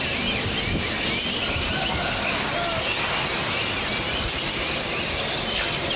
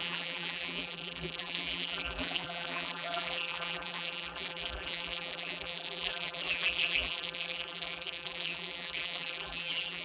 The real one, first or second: first